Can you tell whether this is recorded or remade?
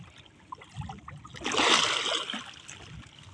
recorded